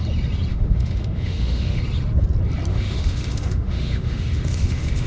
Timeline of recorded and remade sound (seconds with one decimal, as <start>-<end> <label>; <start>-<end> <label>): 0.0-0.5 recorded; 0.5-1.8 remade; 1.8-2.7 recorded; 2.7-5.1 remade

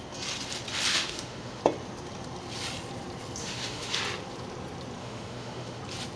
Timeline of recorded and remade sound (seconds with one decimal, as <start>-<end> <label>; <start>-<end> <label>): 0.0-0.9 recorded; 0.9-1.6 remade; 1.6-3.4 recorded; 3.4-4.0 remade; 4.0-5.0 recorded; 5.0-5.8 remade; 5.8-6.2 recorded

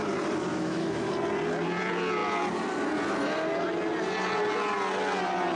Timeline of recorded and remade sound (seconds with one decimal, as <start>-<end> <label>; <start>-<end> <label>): 0.0-0.5 recorded; 0.5-1.1 remade; 1.1-5.6 recorded